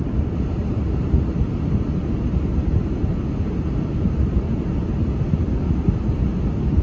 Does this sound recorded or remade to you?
recorded